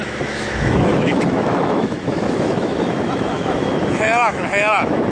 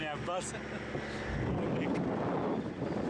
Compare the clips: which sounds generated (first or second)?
first